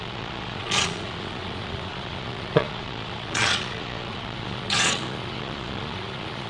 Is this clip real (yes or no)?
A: no